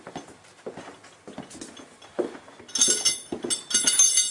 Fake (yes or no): no